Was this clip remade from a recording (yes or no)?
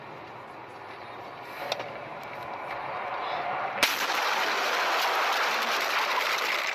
no